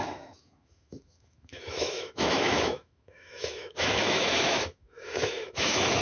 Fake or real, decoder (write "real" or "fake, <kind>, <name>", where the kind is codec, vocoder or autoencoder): fake, autoencoder, DAC-VAE